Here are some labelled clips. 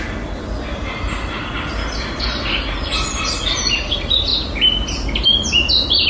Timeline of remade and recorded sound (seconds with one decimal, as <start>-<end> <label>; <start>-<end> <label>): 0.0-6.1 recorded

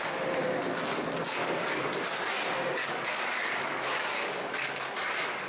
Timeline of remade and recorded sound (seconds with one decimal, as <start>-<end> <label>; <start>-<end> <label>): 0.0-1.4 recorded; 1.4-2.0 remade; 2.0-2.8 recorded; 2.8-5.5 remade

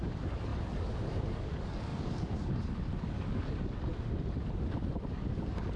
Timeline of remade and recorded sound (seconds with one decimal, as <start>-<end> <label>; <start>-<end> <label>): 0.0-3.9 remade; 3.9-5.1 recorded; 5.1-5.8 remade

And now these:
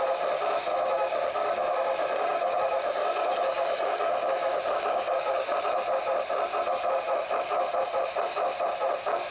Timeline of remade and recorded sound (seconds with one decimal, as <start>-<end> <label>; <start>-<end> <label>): 0.0-0.7 recorded; 0.7-5.6 remade; 5.6-9.3 recorded

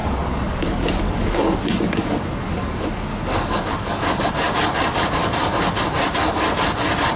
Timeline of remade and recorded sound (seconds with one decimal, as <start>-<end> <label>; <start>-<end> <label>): 0.0-4.3 remade; 4.3-7.2 recorded

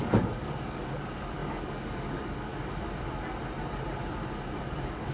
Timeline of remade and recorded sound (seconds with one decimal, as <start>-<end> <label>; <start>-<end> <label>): 0.0-2.5 remade; 2.5-4.6 recorded; 4.6-5.1 remade